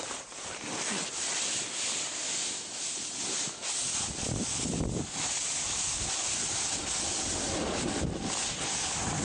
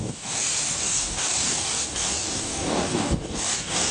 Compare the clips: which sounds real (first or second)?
first